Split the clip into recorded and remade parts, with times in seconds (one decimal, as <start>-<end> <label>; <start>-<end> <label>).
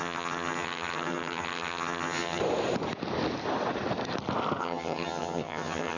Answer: 0.0-2.4 remade; 2.4-4.6 recorded; 4.6-6.0 remade